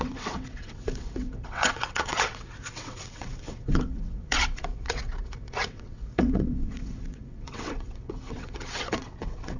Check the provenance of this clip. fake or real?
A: fake